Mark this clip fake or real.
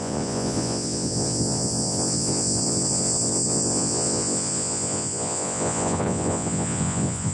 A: fake